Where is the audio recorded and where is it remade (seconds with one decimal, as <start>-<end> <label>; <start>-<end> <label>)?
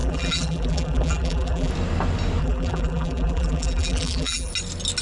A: 0.0-1.7 remade; 1.7-2.4 recorded; 2.4-4.5 remade; 4.5-5.0 recorded